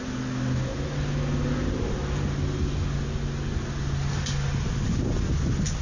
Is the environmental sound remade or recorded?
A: recorded